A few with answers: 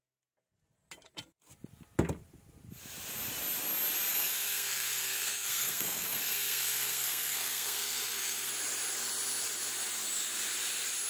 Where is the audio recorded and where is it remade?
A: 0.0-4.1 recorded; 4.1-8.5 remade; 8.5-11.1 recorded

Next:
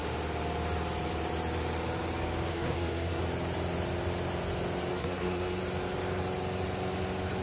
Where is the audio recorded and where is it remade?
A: 0.0-2.5 recorded; 2.5-3.2 remade; 3.2-4.9 recorded; 4.9-5.6 remade; 5.6-7.4 recorded